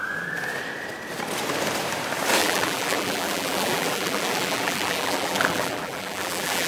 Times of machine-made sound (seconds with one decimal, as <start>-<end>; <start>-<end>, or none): 2.4-6.7